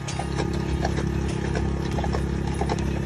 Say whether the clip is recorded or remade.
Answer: recorded